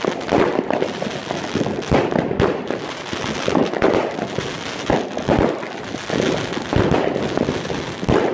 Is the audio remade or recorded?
recorded